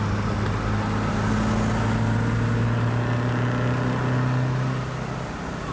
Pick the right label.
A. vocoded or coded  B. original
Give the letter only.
B